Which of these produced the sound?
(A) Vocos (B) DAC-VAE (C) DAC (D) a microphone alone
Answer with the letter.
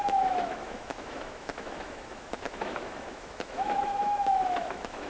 B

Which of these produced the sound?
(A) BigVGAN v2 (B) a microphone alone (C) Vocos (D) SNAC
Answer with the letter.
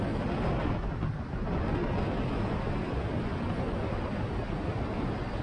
B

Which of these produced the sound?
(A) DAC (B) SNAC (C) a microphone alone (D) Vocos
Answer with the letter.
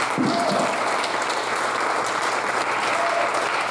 C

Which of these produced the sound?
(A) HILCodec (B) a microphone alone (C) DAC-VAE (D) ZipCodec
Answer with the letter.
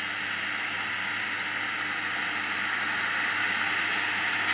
B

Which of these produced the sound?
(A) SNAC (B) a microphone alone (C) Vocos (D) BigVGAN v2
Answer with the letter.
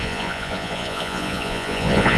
C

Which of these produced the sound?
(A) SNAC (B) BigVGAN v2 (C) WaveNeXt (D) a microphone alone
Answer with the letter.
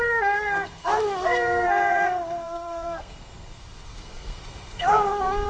A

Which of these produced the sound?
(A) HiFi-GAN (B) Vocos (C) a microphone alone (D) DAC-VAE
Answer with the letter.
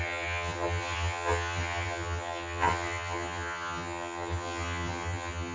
A